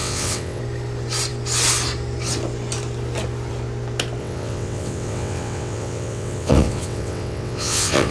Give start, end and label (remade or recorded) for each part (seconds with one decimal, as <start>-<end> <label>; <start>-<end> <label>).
0.0-0.6 remade; 0.6-4.2 recorded; 4.2-8.1 remade